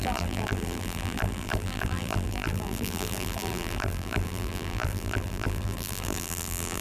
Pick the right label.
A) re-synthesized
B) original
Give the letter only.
A